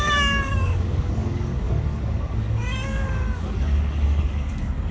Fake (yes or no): yes